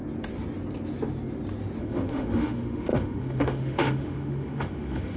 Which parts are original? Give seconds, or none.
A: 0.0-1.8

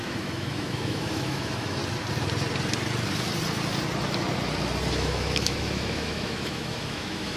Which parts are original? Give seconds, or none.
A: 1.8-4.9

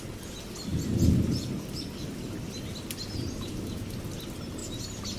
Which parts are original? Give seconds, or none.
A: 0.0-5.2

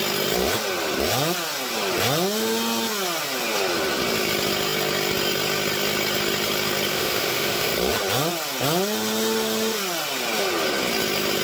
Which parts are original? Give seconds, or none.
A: 0.0-6.9; 7.7-11.4

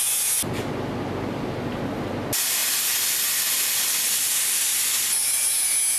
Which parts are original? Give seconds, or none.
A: 0.0-6.0

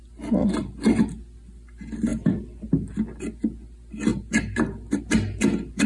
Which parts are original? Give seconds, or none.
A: 0.0-5.9

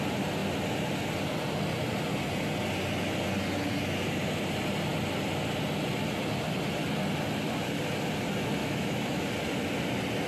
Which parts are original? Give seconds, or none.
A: 0.0-8.6; 9.3-10.3

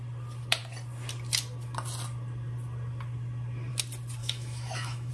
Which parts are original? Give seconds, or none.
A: 0.0-4.2